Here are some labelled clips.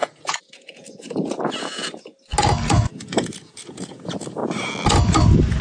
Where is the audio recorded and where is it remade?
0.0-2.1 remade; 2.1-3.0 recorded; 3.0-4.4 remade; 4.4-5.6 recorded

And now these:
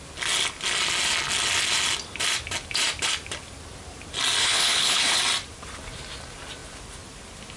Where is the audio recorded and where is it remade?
0.0-4.4 recorded; 4.4-5.2 remade; 5.2-7.6 recorded

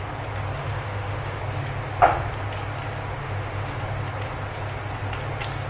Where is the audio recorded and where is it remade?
0.0-0.6 recorded; 0.6-1.4 remade; 1.4-3.2 recorded; 3.2-3.8 remade; 3.8-5.7 recorded

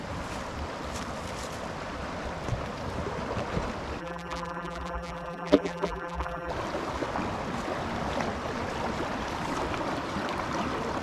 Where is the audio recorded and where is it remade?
0.0-4.0 recorded; 4.0-6.5 remade; 6.5-11.0 recorded

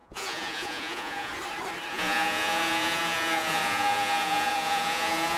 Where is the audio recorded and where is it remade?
0.0-1.3 remade; 1.3-1.9 recorded; 1.9-5.4 remade